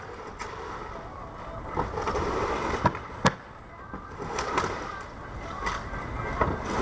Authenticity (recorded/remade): recorded